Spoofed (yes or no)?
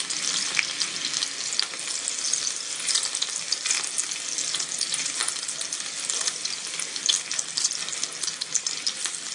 no